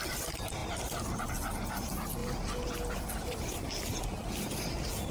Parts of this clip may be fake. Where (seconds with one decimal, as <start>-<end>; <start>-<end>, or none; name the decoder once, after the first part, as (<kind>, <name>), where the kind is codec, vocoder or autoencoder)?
0.6-1.2 (vocoder, BigVGAN v2); 2.2-3.8